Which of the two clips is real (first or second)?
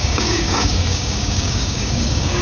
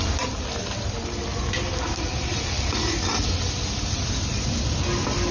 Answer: second